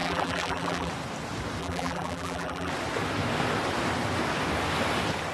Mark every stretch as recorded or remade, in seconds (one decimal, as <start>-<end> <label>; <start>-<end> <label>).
0.0-0.9 remade; 0.9-1.6 recorded; 1.6-2.7 remade; 2.7-5.3 recorded